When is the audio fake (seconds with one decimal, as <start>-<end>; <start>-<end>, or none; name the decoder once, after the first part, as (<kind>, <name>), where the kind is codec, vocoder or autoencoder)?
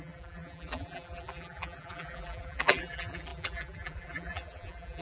0.0-5.0 (vocoder, BigVGAN v2)